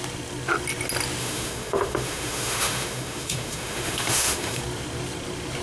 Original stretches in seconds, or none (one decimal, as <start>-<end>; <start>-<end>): 0.0-1.2; 4.6-5.6

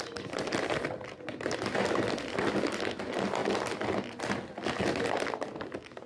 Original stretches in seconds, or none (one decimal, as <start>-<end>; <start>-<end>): 0.0-6.1

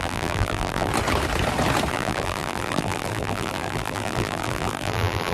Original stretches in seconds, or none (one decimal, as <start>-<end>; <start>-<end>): 0.9-1.9